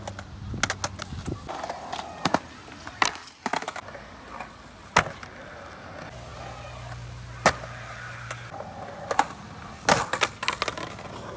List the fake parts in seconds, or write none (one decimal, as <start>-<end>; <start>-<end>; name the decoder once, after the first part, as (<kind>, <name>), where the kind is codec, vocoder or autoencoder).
none